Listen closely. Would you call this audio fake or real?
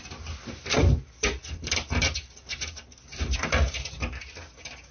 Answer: real